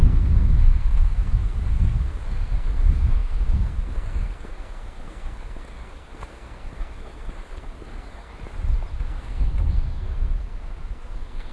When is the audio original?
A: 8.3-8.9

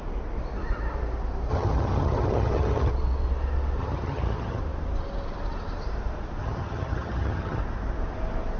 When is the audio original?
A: 0.0-1.5; 2.9-3.8; 4.6-6.4; 7.6-8.6

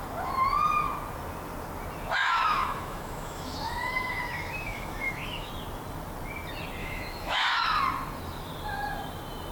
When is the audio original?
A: 0.0-2.2; 5.5-6.8; 7.8-9.5

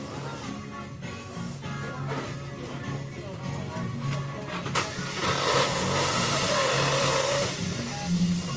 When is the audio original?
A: 0.0-8.6

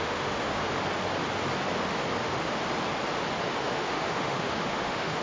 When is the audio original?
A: 0.6-2.2; 2.6-3.4

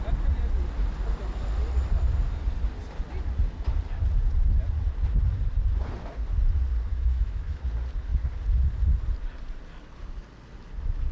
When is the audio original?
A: 0.0-6.9; 7.6-11.1